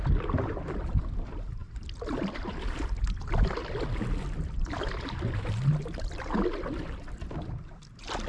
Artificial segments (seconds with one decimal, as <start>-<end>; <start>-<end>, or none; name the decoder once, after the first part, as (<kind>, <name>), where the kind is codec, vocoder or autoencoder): none